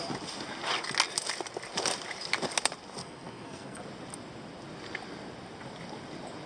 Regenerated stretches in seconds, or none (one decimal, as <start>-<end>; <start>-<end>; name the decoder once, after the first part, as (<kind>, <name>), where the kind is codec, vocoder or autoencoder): 3.0-3.8 (codec, SNAC)